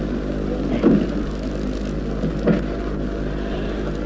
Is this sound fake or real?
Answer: real